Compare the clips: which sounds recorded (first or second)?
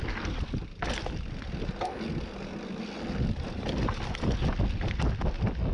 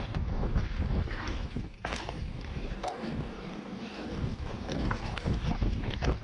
first